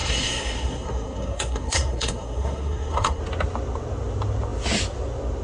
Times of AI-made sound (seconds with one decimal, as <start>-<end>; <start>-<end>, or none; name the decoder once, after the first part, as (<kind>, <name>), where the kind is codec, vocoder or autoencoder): 0.0-3.2 (codec, SNAC)